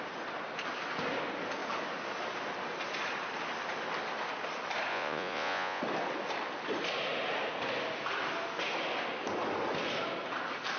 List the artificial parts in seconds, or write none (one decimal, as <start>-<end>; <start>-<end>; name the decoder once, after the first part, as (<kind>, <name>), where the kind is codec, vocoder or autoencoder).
4.9-5.8 (vocoder, Vocos)